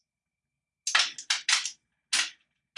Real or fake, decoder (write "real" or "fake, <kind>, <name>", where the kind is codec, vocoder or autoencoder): real